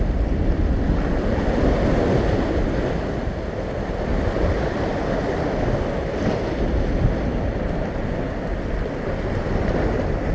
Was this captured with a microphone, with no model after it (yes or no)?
yes